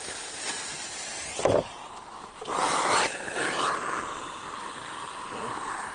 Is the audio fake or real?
real